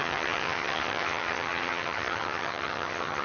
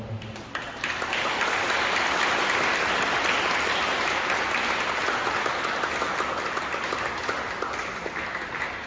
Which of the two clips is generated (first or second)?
first